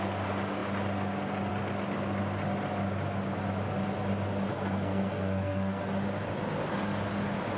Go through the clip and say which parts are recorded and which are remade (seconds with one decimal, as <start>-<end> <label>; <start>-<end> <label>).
0.0-4.5 recorded; 4.5-5.8 remade; 5.8-7.6 recorded